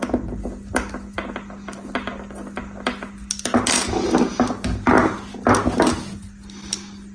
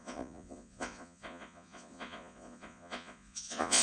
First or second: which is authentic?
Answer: first